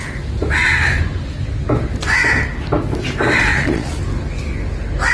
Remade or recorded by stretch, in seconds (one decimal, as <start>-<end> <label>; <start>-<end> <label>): 0.0-3.5 recorded; 3.5-4.0 remade; 4.0-5.1 recorded